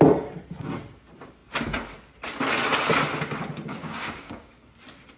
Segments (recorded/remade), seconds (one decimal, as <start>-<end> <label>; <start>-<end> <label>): 0.0-3.7 recorded; 3.7-4.5 remade; 4.5-5.2 recorded